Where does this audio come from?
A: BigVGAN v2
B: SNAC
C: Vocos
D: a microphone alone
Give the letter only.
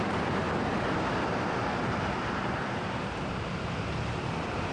A